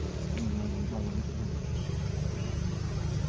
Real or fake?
real